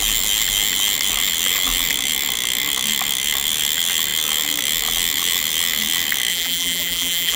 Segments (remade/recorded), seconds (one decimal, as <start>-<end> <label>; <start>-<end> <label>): 0.0-6.3 recorded; 6.3-7.4 remade